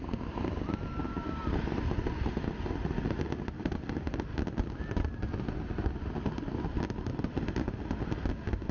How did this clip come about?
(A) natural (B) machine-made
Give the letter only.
A